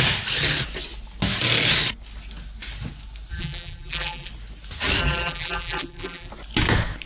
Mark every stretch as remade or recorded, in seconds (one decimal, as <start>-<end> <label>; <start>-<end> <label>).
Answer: 0.0-3.3 recorded; 3.3-4.3 remade; 4.3-5.0 recorded; 5.0-6.3 remade; 6.3-7.1 recorded